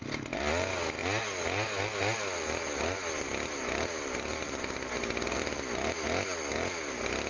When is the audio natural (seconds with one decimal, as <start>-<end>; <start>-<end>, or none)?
0.0-7.3